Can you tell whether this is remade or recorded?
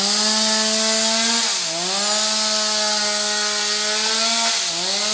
recorded